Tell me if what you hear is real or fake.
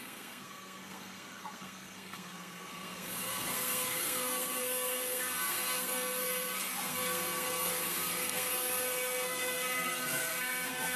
fake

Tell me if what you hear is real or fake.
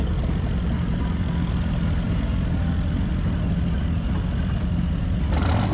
real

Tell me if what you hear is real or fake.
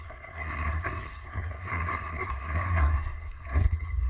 fake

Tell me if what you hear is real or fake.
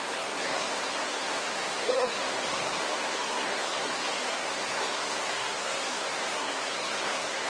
fake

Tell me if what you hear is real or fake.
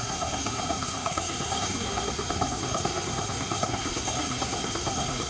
fake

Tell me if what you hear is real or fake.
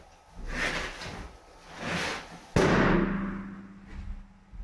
real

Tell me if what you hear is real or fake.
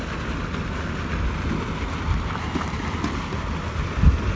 real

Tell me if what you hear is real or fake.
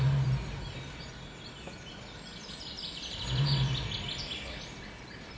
real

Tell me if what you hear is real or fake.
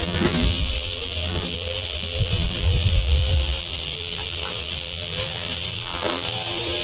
fake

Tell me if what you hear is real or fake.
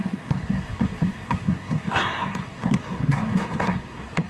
fake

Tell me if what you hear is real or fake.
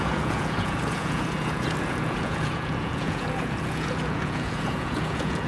fake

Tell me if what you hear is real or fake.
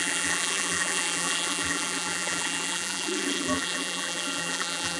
fake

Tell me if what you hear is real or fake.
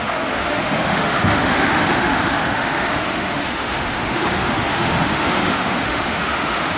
fake